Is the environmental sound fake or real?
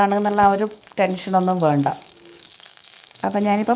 fake